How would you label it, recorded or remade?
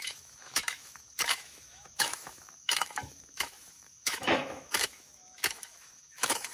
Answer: remade